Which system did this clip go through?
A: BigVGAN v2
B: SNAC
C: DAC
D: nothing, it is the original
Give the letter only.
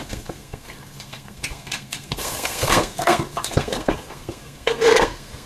B